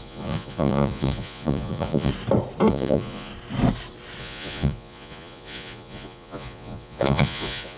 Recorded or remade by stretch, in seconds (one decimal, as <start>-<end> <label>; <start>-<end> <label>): 0.0-2.1 remade; 2.1-2.7 recorded; 2.7-3.3 remade; 3.3-4.2 recorded; 4.2-7.8 remade